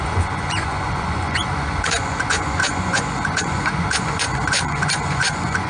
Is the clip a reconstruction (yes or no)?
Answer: yes